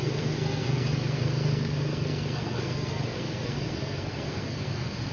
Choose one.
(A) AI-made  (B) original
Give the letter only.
A